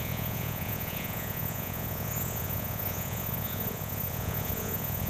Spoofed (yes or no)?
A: yes